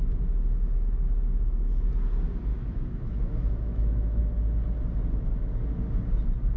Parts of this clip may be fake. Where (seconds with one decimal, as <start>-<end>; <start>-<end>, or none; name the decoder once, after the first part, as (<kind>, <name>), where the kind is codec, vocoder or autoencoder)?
2.5-4.2 (autoencoder, DAC-VAE)